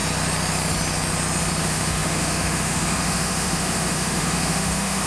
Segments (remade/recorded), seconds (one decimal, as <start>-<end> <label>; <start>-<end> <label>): 0.0-1.6 recorded; 1.6-5.1 remade